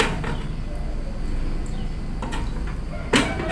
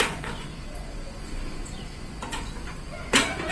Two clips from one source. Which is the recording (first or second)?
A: first